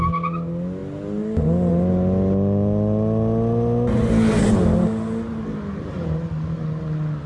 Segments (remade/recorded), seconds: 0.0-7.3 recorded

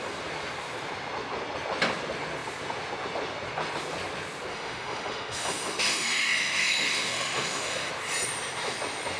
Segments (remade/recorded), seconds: 0.0-4.5 recorded; 4.5-7.9 remade; 7.9-9.2 recorded

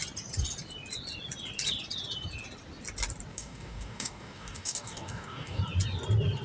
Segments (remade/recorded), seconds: 0.0-3.3 recorded; 3.3-5.6 remade; 5.6-6.4 recorded

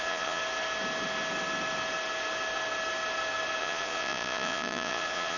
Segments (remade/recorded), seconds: 0.0-0.4 remade; 0.4-3.6 recorded; 3.6-5.4 remade

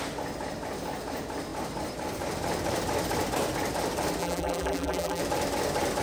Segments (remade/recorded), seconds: 0.0-4.2 recorded; 4.2-5.2 remade; 5.2-6.0 recorded

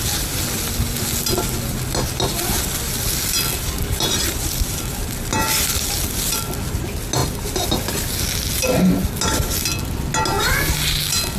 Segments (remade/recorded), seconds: 0.0-11.4 recorded